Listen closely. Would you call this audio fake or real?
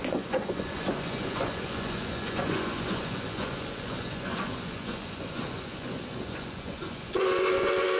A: fake